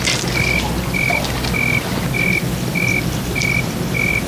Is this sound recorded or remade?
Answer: recorded